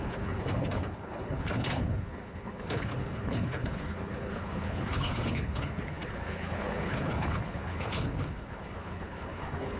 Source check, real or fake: fake